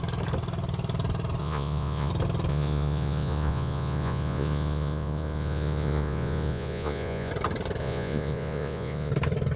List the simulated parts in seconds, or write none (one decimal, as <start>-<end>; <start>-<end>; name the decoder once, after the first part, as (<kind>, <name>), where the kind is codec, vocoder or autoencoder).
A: 1.4-2.1 (vocoder, Vocos); 2.5-7.3; 7.8-9.1